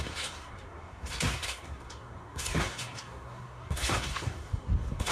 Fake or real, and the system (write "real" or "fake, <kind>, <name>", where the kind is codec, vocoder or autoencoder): fake, codec, SNAC